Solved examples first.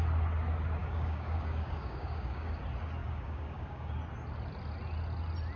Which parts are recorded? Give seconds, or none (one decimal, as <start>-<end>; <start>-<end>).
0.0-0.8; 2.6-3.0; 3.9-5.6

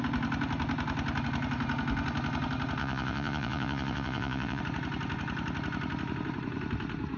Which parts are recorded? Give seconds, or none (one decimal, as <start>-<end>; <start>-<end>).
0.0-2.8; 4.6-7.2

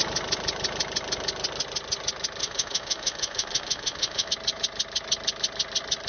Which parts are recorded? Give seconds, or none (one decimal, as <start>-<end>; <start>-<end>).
0.0-2.4; 4.3-6.1

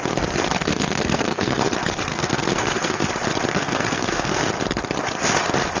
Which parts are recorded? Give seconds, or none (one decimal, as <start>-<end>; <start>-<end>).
0.0-0.6; 1.7-2.1; 3.1-3.5; 4.5-5.8

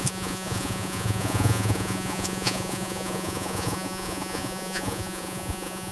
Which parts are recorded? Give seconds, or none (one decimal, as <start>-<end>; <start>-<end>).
none

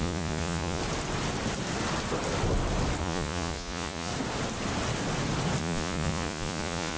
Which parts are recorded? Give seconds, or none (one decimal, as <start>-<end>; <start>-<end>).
0.8-3.0; 4.1-5.6

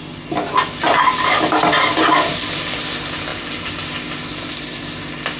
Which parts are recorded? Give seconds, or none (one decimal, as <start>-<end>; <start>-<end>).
0.0-5.4